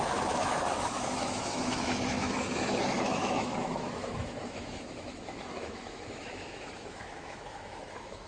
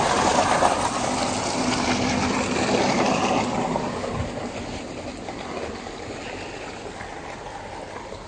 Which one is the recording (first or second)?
second